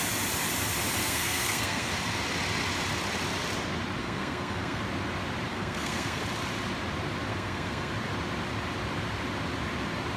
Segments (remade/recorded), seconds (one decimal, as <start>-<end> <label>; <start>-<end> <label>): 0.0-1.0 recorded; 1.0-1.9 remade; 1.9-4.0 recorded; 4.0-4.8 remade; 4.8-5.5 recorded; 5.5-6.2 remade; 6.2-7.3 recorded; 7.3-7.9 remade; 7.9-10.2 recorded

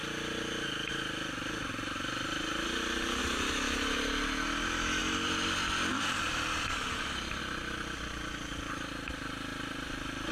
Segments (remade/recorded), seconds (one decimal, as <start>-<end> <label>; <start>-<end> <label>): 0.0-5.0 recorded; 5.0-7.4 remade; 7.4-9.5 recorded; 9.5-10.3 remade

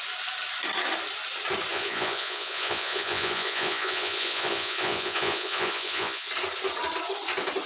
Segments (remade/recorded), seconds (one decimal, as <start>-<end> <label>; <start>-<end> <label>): 0.0-1.7 recorded; 1.7-6.3 remade; 6.3-7.7 recorded

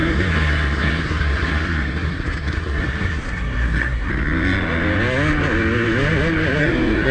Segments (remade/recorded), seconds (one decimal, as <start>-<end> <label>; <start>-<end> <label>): 0.0-4.1 remade; 4.1-6.6 recorded; 6.6-7.1 remade

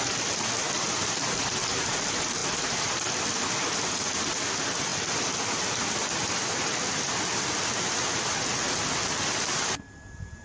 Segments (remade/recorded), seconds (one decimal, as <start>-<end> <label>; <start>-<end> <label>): 0.0-10.4 recorded

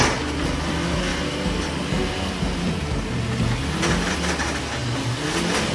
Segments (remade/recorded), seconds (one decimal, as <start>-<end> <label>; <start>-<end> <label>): 0.0-5.7 recorded

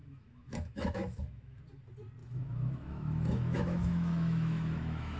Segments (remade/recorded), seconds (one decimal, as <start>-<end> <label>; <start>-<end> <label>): 0.0-1.6 remade; 1.6-2.2 recorded; 2.2-5.2 remade